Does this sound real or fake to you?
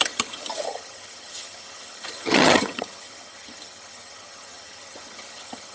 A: fake